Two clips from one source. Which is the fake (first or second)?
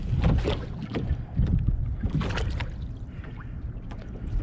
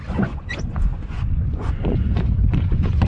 second